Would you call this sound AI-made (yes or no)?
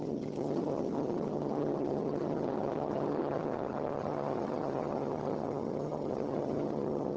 yes